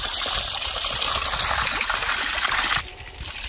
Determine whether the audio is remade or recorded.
remade